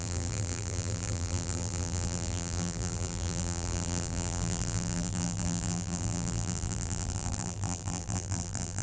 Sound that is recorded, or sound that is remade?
remade